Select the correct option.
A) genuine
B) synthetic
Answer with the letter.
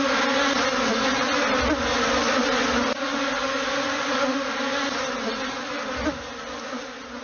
A